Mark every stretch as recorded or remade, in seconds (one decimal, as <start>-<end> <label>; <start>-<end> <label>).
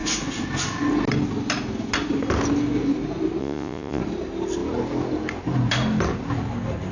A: 0.0-3.4 recorded; 3.4-4.0 remade; 4.0-6.9 recorded